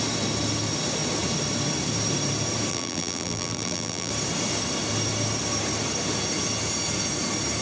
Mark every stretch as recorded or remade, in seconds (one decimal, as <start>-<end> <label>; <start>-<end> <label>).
0.0-2.7 recorded; 2.7-4.1 remade; 4.1-7.6 recorded